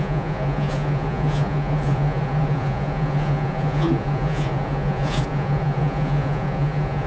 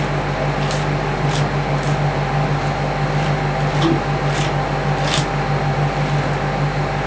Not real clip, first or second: first